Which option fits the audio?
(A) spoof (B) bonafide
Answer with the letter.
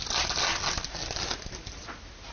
B